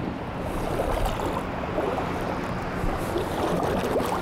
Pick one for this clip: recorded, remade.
recorded